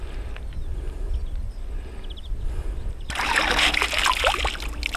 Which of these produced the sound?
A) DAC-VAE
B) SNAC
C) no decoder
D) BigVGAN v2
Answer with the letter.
C